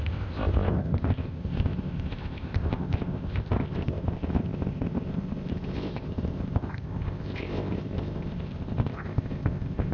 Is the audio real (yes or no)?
no